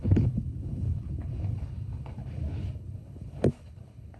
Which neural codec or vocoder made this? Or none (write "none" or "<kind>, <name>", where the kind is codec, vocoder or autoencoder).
codec, HILCodec